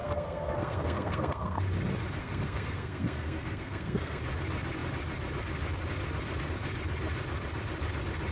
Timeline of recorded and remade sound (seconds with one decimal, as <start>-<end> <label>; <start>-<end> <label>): 0.0-1.6 remade; 1.6-2.2 recorded; 2.2-4.2 remade; 4.2-8.3 recorded